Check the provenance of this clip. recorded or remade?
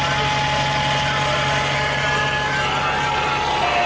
recorded